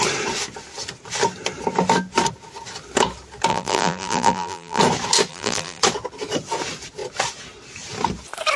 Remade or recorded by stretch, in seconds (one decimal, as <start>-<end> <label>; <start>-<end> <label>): 0.0-3.5 recorded; 3.5-4.8 remade; 4.8-5.3 recorded; 5.3-5.8 remade; 5.8-8.6 recorded